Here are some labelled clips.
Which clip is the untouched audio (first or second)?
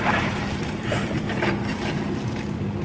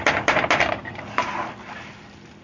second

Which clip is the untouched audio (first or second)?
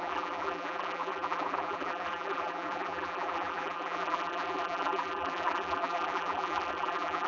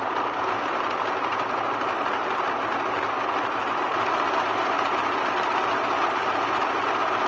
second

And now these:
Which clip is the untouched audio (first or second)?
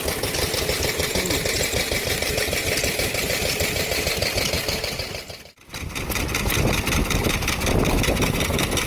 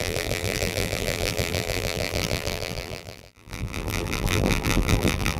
first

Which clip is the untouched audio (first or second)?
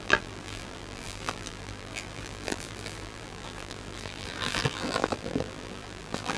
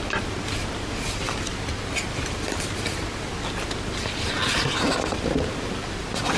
second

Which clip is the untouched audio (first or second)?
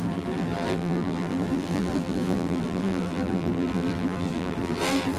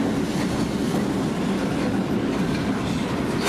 second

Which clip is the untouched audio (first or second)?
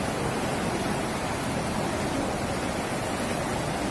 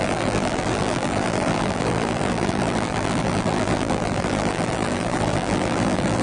first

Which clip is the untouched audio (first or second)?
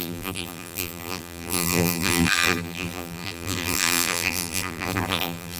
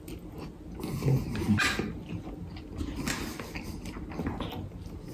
second